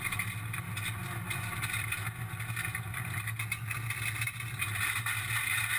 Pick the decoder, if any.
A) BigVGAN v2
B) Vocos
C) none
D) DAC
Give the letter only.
C